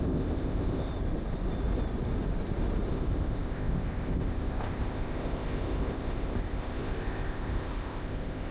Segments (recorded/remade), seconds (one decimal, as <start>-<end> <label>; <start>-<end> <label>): 0.0-0.9 remade; 0.9-2.9 recorded; 2.9-8.5 remade